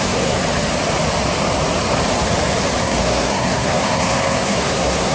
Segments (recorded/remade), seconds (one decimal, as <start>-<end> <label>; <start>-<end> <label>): 0.0-0.4 remade; 0.4-2.8 recorded; 2.8-5.1 remade

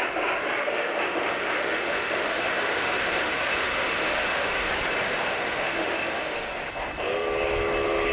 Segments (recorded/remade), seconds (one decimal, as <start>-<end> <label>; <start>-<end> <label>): 0.0-0.6 recorded; 0.6-4.7 remade; 4.7-5.3 recorded; 5.3-6.5 remade; 6.5-8.1 recorded

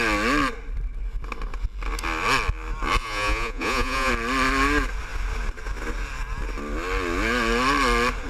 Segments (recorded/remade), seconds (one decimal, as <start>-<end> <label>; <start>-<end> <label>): 0.0-3.0 recorded; 3.0-4.1 remade; 4.1-8.3 recorded

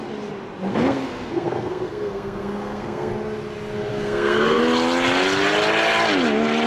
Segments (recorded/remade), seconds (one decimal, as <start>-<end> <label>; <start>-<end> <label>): 0.0-0.7 recorded; 0.7-3.1 remade; 3.1-3.9 recorded; 3.9-4.6 remade; 4.6-6.7 recorded

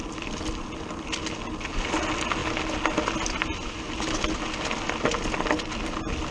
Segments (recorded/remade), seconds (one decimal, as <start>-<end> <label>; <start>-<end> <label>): 0.0-6.3 recorded

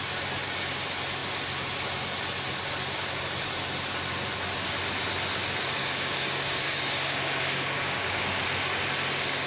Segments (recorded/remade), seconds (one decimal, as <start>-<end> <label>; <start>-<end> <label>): 0.0-5.8 recorded; 5.8-8.2 remade; 8.2-9.5 recorded

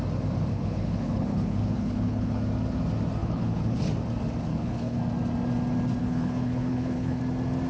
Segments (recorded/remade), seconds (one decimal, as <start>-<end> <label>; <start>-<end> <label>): 0.0-0.5 recorded; 0.5-2.4 remade; 2.4-3.2 recorded; 3.2-3.8 remade; 3.8-4.5 recorded; 4.5-5.0 remade; 5.0-6.0 recorded; 6.0-7.2 remade; 7.2-7.7 recorded